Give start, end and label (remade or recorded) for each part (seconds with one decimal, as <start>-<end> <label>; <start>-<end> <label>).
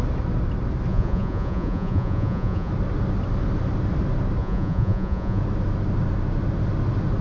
0.0-0.9 recorded; 0.9-2.7 remade; 2.7-4.4 recorded; 4.4-5.4 remade; 5.4-7.2 recorded